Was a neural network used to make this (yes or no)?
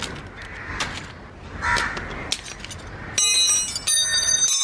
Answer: no